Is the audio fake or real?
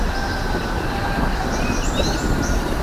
real